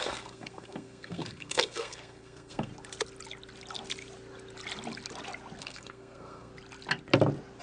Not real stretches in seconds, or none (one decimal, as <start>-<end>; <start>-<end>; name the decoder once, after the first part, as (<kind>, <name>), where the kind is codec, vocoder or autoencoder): 0.0-2.7 (codec, SNAC); 5.6-6.5

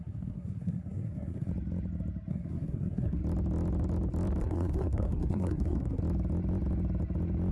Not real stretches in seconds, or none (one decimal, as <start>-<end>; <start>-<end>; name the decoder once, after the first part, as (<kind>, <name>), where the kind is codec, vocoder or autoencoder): 0.0-1.5 (codec, SNAC); 2.3-3.2; 4.4-6.0

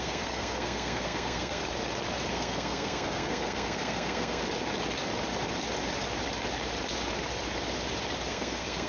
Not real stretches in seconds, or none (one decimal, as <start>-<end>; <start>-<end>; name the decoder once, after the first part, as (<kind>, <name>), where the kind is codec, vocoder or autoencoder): 0.0-1.6 (codec, SNAC); 2.3-4.4; 8.3-8.9

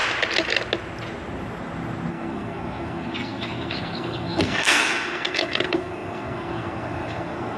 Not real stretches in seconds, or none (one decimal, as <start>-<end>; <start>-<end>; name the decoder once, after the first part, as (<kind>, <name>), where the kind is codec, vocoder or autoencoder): 2.1-7.6 (codec, SNAC)

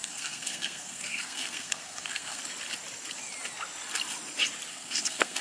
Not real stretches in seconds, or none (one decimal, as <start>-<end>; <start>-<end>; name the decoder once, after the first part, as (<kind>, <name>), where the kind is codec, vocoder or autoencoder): 0.0-2.4 (codec, SNAC); 4.7-5.4

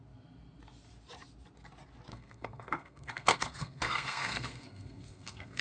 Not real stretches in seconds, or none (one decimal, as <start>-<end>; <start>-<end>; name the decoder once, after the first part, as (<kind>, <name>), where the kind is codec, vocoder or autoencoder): 2.1-5.6 (codec, SNAC)